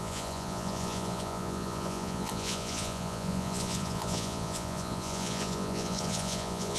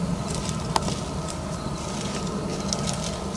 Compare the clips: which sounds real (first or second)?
second